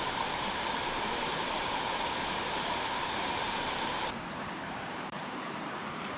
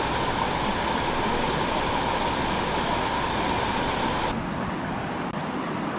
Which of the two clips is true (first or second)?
second